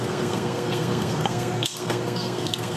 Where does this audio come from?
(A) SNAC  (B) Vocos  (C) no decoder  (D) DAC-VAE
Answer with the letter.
A